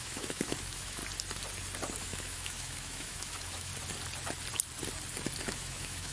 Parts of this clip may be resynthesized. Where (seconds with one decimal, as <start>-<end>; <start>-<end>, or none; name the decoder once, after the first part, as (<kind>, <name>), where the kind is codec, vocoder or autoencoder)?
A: 0.0-1.0 (autoencoder, DAC-VAE); 2.0-3.7; 5.4-6.1